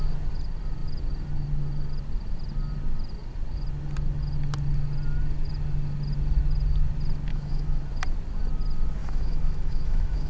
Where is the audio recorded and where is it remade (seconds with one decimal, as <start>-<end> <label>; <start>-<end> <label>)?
0.0-7.3 recorded; 7.3-7.8 remade; 7.8-9.0 recorded; 9.0-10.3 remade